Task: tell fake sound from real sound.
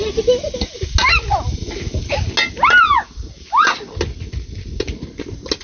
real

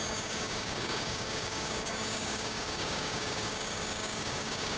fake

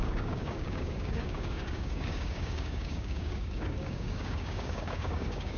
fake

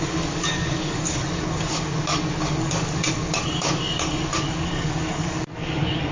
fake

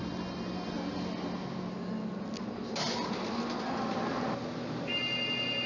real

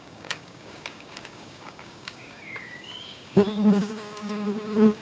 fake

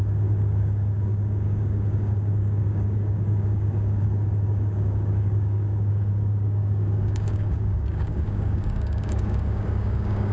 fake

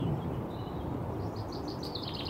real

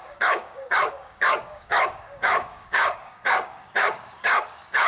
fake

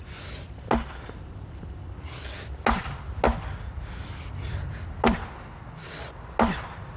real